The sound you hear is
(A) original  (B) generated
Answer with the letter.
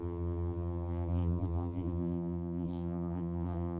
B